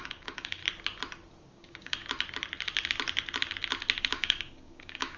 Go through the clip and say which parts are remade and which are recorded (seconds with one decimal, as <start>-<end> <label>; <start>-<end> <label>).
0.0-0.6 remade; 0.6-1.4 recorded; 1.4-2.0 remade; 2.0-4.0 recorded; 4.0-5.2 remade

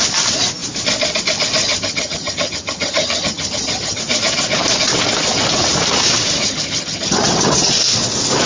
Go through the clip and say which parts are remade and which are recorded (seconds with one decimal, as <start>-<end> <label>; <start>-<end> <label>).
0.0-1.6 recorded; 1.6-4.0 remade; 4.0-6.4 recorded; 6.4-7.7 remade; 7.7-8.5 recorded

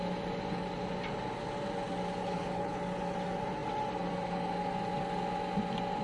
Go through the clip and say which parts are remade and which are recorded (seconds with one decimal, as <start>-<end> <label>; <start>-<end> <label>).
0.0-2.2 recorded; 2.2-2.8 remade; 2.8-6.0 recorded

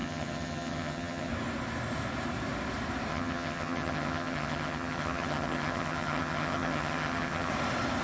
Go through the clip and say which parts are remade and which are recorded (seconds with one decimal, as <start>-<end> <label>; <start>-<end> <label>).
0.0-1.3 remade; 1.3-3.1 recorded; 3.1-7.5 remade; 7.5-8.0 recorded

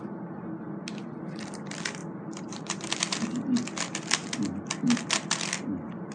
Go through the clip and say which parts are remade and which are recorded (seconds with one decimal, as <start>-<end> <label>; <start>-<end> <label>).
0.0-2.0 recorded; 2.0-3.0 remade; 3.0-6.1 recorded